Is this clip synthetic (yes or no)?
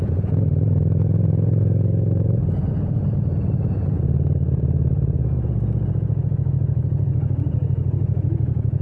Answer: yes